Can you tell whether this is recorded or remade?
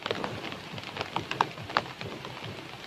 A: recorded